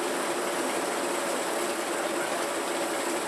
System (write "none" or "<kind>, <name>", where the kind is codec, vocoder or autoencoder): none